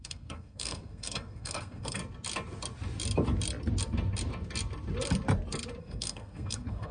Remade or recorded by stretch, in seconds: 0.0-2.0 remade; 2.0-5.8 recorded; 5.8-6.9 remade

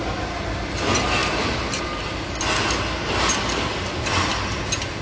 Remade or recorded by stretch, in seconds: 0.0-5.0 recorded